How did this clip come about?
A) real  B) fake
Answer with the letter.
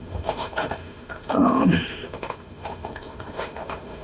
B